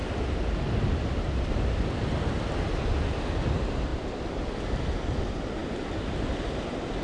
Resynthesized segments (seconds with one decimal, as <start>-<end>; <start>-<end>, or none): none